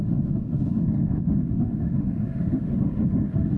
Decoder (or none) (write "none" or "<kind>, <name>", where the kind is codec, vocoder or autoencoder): autoencoder, DAC-VAE